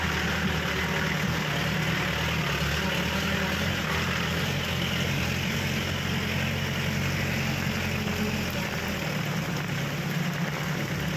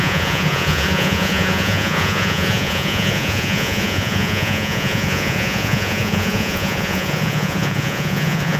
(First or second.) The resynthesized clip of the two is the second